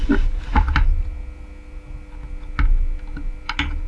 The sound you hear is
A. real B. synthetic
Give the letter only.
A